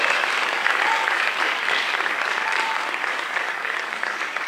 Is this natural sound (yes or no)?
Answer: no